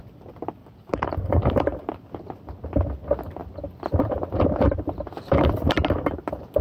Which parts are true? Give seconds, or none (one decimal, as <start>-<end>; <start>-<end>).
0.0-0.6; 1.9-6.6